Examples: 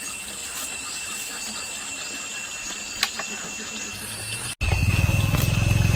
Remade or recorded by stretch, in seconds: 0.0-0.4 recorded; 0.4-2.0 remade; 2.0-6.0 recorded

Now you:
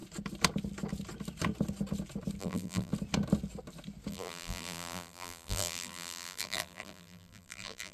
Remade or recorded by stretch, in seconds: 0.0-2.4 recorded; 2.4-2.9 remade; 2.9-4.1 recorded; 4.1-7.9 remade

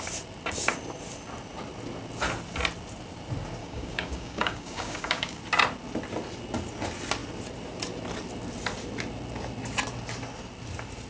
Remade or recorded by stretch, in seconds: 0.0-3.6 recorded; 3.6-5.4 remade; 5.4-11.1 recorded

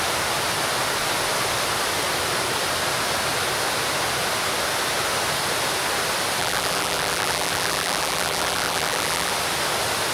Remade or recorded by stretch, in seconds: 0.0-6.4 recorded; 6.4-9.3 remade; 9.3-10.1 recorded